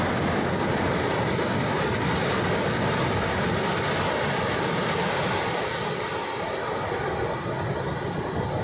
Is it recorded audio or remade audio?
recorded